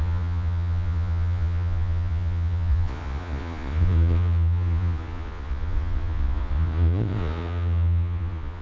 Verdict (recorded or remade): remade